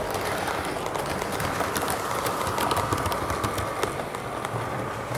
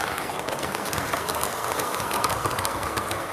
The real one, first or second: first